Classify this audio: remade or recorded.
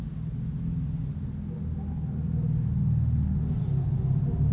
recorded